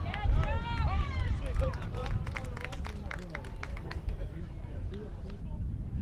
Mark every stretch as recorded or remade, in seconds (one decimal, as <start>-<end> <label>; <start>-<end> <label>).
0.0-3.7 recorded; 3.7-4.4 remade; 4.4-6.0 recorded